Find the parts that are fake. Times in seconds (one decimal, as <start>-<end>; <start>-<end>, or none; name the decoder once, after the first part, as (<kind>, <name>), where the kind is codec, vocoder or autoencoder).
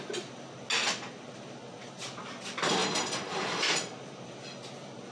none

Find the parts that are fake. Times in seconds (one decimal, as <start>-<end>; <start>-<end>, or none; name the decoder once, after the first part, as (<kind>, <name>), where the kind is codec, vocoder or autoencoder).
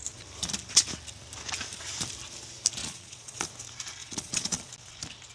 2.8-3.5 (vocoder, Vocos); 4.0-4.7